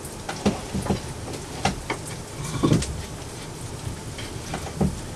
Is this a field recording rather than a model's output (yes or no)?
yes